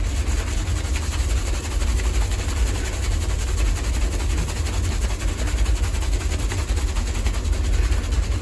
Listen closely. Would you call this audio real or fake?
real